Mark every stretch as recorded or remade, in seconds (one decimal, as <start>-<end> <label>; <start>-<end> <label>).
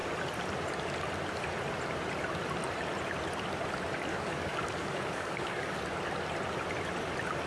0.0-4.1 recorded; 4.1-5.8 remade; 5.8-7.5 recorded